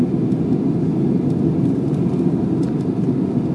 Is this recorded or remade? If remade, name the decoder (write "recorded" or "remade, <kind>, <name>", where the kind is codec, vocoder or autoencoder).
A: recorded